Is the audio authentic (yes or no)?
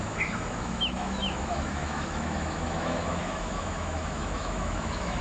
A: no